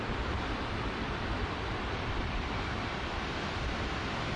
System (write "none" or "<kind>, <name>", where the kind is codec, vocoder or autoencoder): vocoder, BigVGAN v2